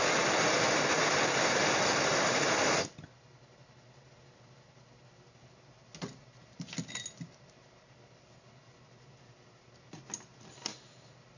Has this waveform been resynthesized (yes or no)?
no